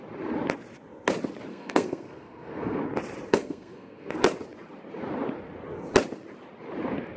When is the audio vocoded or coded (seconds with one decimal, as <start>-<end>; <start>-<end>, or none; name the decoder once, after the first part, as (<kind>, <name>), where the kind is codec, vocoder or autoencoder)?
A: 1.5-2.8 (codec, SNAC); 3.3-4.1